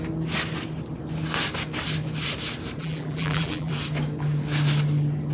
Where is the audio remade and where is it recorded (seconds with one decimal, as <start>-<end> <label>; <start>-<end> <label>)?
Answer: 0.0-2.8 recorded; 2.8-3.7 remade; 3.7-5.3 recorded